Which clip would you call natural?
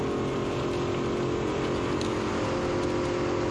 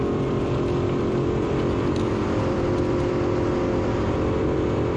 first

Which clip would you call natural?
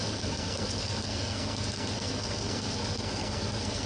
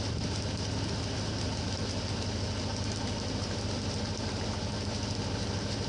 second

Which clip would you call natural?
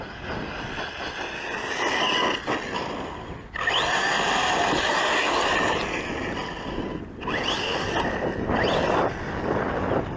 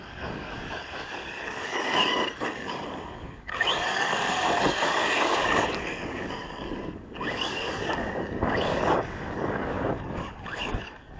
first